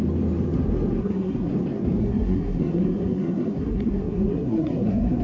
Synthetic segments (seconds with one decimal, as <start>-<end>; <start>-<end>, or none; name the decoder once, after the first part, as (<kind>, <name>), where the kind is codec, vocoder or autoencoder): 1.0-1.5 (codec, SNAC); 2.0-5.2

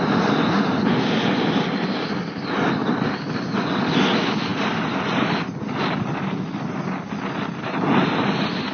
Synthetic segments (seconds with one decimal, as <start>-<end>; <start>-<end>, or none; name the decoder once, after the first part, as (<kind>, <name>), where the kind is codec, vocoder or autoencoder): none

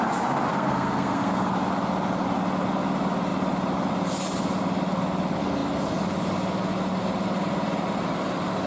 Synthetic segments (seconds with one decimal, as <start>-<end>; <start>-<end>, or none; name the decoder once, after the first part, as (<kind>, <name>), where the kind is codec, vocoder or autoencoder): 0.5-1.5 (codec, SNAC)

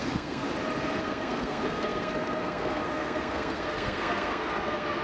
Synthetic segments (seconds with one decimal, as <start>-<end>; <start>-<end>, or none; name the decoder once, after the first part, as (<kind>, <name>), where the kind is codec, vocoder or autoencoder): 0.0-0.4 (codec, SNAC); 1.0-5.0

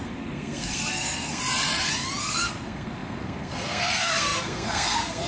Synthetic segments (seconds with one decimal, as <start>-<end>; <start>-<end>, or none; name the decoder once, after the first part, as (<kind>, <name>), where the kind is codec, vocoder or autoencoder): 0.0-1.4 (codec, SNAC); 2.2-5.3

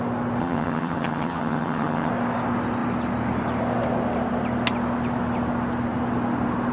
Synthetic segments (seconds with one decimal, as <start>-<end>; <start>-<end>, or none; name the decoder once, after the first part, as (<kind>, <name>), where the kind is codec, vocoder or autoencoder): 0.4-2.1 (vocoder, HiFi-GAN)

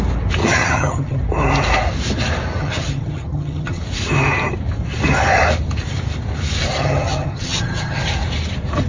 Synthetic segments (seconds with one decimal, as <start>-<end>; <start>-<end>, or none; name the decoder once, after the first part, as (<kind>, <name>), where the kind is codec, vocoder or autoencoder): 0.4-1.2 (vocoder, HiFi-GAN); 2.6-3.8; 6.8-8.0